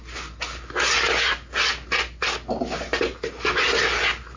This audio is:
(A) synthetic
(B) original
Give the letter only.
B